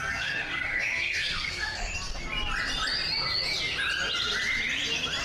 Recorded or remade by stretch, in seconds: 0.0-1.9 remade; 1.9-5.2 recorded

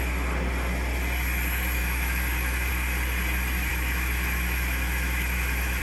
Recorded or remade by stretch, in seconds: 0.0-1.8 recorded; 1.8-2.7 remade; 2.7-3.7 recorded; 3.7-5.8 remade

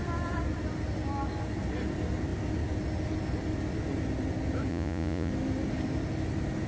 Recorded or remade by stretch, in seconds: 0.0-4.7 recorded; 4.7-5.3 remade; 5.3-6.7 recorded

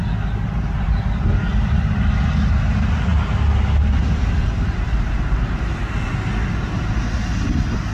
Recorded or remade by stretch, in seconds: 0.0-7.9 recorded

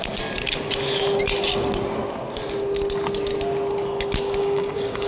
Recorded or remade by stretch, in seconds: 0.0-4.4 recorded; 4.4-5.1 remade